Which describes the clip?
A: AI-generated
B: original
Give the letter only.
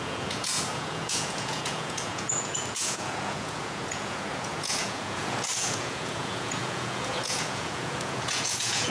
A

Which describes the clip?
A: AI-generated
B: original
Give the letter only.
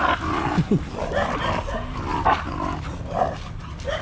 B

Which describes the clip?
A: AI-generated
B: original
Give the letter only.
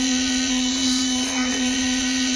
A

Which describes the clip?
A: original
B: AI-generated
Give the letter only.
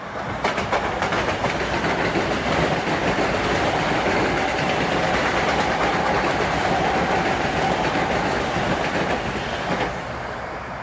A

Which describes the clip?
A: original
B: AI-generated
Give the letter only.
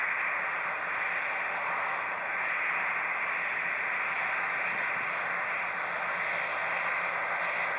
A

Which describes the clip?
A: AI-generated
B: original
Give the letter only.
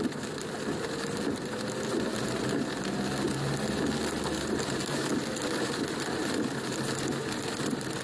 B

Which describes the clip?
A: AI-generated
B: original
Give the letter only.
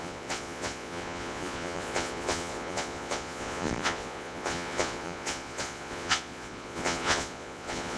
A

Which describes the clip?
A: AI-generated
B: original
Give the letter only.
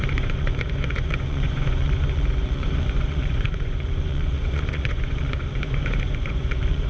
A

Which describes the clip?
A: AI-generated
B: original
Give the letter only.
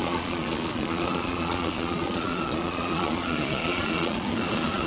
A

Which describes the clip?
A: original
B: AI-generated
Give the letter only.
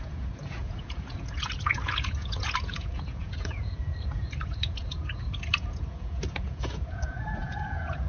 B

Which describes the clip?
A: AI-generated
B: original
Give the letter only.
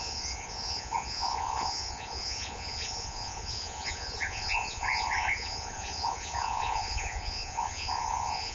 A